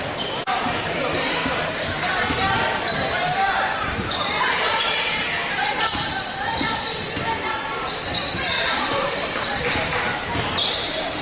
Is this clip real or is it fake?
fake